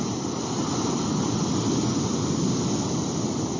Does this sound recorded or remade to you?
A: recorded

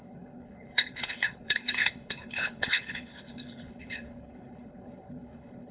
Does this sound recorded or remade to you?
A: remade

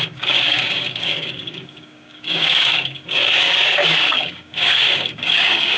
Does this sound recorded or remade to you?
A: remade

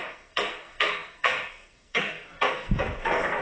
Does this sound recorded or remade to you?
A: remade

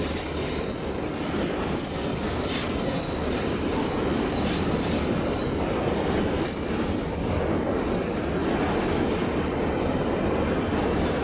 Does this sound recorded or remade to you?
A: recorded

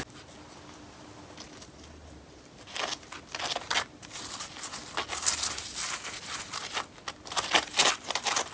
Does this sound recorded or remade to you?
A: recorded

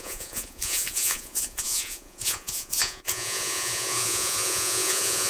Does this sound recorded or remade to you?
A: remade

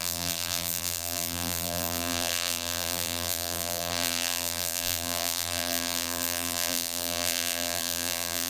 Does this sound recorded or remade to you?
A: remade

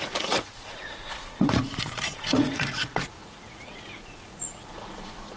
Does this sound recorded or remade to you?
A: remade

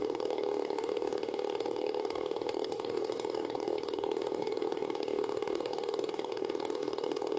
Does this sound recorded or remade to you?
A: remade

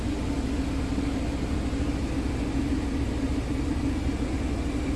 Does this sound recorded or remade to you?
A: recorded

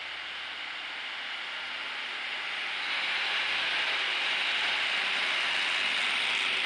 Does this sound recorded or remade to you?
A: recorded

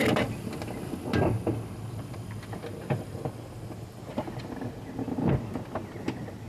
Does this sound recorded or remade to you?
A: recorded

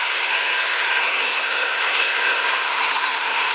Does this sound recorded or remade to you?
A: remade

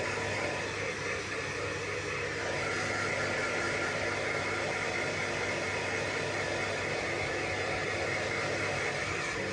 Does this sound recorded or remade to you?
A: recorded